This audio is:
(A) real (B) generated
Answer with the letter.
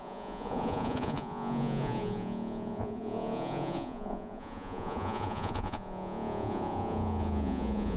B